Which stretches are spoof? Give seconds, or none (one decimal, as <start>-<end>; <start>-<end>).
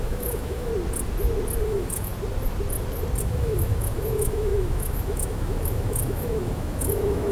0.0-0.7; 1.6-2.1; 3.2-7.3